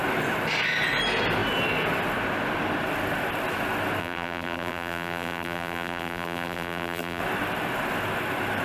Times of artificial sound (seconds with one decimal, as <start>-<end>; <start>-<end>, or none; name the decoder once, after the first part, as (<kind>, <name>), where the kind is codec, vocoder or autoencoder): 4.0-7.2 (vocoder, BigVGAN v2)